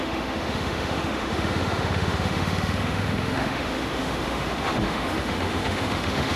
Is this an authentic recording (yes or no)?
no